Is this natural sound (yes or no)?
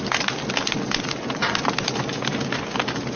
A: yes